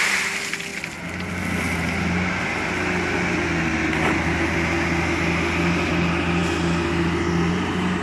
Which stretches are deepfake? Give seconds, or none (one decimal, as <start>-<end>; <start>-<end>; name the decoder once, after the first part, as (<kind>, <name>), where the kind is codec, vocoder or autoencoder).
none